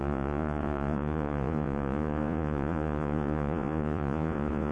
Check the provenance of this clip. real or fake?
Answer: fake